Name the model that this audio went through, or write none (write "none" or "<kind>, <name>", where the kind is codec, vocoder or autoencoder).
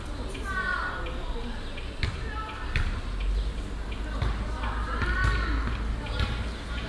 none